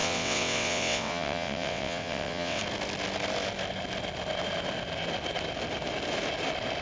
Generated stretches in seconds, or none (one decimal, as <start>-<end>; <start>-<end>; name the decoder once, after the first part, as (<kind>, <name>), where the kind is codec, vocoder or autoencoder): 0.0-2.6 (vocoder, WaveNeXt)